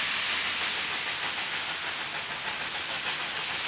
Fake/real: real